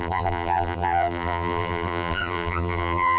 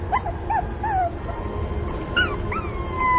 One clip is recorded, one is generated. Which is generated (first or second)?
first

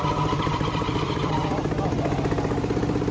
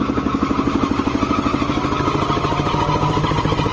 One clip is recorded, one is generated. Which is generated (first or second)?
first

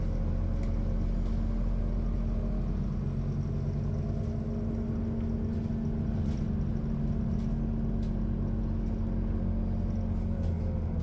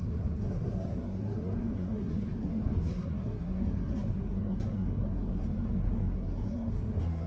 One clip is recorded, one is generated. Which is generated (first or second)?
second